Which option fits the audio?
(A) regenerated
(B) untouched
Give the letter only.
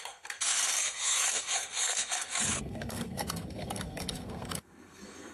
A